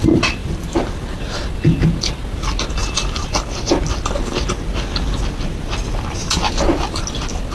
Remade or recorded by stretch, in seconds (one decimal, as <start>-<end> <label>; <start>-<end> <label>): 0.0-0.4 recorded; 0.4-1.2 remade; 1.2-2.8 recorded; 2.8-3.7 remade; 3.7-7.5 recorded